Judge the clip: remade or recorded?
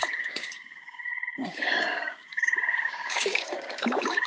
remade